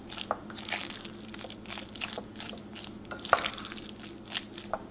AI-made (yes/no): no